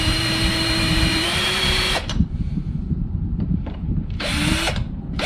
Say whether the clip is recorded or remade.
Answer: remade